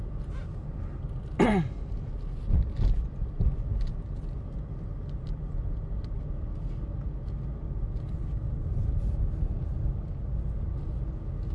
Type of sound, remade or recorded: recorded